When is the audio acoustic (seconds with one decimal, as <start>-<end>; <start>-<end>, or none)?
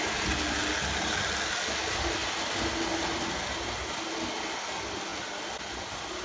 0.0-6.2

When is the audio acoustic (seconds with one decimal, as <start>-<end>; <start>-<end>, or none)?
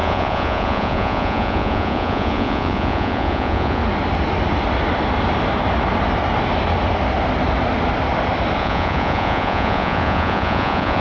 3.8-8.6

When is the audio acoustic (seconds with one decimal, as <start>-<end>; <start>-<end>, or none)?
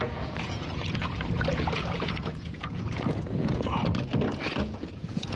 3.8-4.5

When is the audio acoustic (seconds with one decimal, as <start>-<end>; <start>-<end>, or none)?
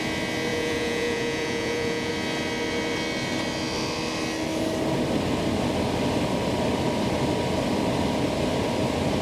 0.0-0.5; 2.1-9.2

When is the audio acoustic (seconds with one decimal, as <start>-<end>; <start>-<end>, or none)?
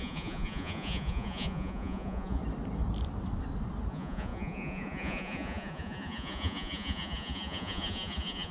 2.4-3.9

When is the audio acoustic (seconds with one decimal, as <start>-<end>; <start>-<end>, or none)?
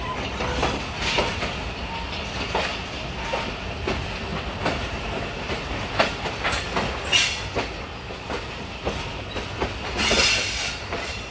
0.0-11.3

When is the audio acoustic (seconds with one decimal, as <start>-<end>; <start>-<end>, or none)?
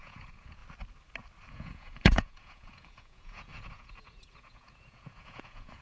0.6-1.5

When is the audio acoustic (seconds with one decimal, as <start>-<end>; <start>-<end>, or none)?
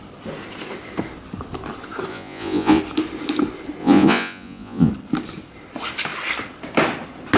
0.0-2.1; 2.8-3.8; 4.9-7.4